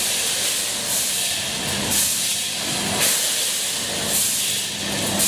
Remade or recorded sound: recorded